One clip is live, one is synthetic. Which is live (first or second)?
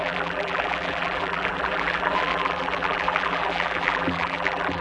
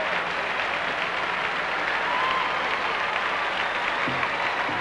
second